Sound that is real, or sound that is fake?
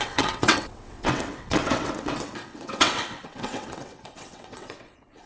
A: fake